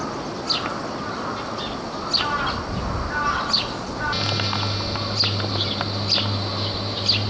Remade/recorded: recorded